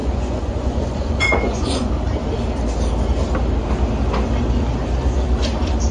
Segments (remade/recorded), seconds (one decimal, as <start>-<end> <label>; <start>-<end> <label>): 0.0-1.9 remade; 1.9-5.9 recorded